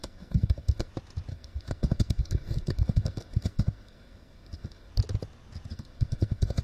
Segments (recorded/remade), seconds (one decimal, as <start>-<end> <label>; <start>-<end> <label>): 0.0-0.9 remade; 0.9-1.3 recorded; 1.3-4.9 remade; 4.9-5.7 recorded; 5.7-6.6 remade